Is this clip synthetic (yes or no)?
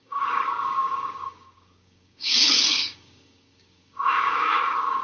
yes